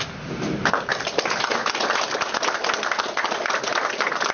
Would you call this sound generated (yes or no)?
no